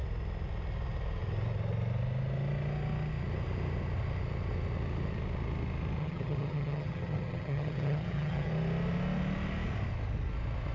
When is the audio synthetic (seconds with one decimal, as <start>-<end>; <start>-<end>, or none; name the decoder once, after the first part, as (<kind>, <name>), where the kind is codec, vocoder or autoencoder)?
6.0-8.5 (vocoder, HiFi-GAN)